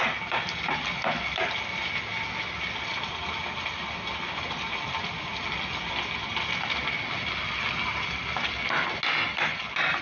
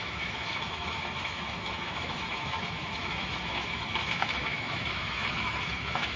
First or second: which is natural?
first